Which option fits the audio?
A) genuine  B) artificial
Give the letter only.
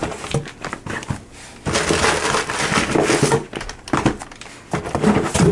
A